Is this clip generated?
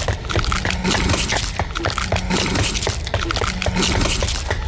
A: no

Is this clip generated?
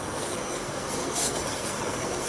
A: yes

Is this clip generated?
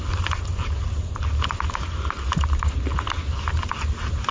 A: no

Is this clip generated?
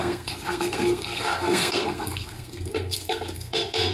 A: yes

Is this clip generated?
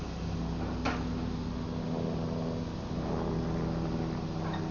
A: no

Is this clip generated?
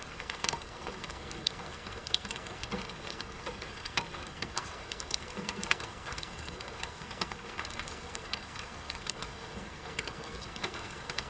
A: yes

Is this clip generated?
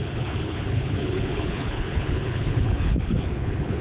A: yes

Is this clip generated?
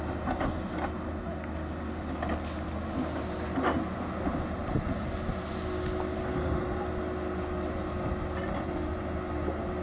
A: no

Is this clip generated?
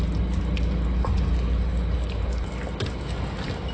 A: no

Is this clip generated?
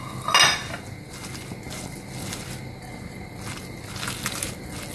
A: no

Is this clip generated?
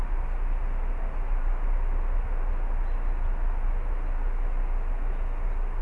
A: no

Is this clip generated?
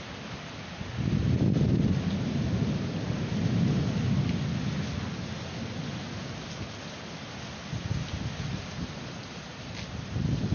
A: no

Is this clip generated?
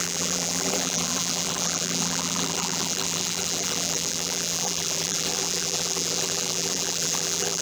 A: yes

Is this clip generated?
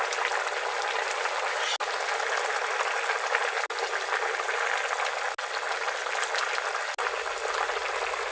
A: no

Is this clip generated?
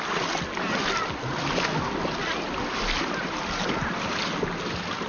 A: no